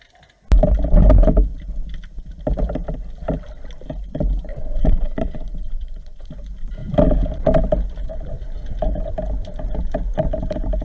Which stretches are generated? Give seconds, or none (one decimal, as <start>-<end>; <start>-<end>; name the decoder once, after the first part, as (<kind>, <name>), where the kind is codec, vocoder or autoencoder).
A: 4.5-6.3 (vocoder, Vocos)